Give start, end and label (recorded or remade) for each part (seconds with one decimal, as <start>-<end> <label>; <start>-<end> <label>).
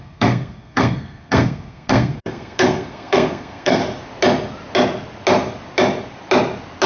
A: 0.0-3.8 remade; 3.8-6.9 recorded